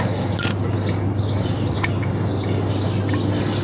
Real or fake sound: real